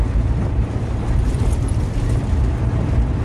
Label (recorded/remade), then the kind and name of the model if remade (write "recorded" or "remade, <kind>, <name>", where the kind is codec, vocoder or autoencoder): remade, vocoder, BigVGAN v2